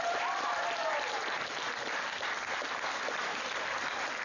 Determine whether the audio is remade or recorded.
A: recorded